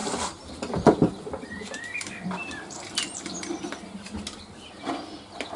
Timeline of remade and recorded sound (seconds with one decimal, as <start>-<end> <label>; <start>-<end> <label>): 0.0-3.4 remade; 3.4-5.6 recorded